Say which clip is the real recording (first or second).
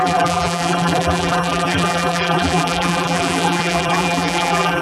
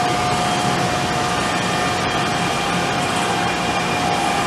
second